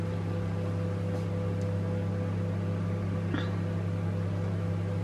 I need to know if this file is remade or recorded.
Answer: recorded